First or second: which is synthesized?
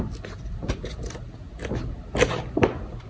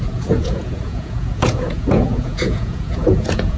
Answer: second